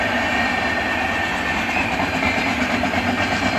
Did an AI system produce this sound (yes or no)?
no